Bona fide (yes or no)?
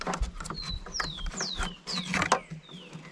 yes